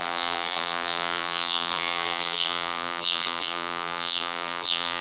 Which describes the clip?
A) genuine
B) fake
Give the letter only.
B